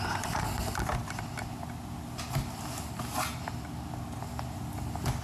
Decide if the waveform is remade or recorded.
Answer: recorded